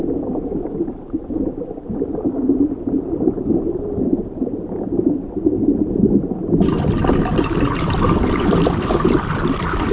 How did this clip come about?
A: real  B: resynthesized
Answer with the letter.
B